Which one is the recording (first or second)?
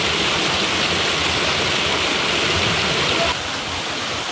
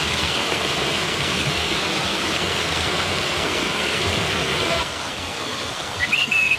first